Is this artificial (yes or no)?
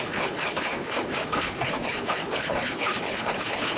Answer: yes